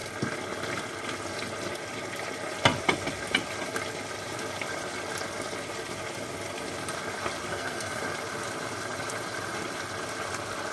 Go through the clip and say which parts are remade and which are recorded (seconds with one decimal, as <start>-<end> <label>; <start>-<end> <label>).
0.0-7.5 recorded; 7.5-8.0 remade; 8.0-10.7 recorded